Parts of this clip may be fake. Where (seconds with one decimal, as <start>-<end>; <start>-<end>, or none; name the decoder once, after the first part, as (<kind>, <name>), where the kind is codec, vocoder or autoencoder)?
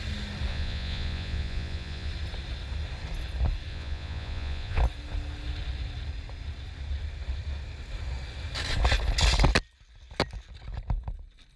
0.5-2.1 (vocoder, Vocos); 3.7-4.8